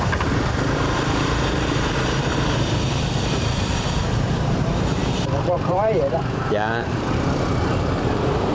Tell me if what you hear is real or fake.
fake